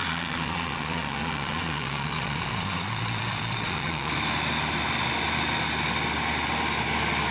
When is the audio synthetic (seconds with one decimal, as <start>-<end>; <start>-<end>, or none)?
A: 0.0-4.1